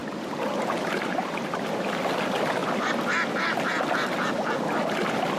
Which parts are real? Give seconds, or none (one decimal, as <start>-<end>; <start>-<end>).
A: 1.4-5.4